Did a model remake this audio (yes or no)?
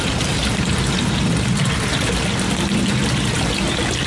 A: yes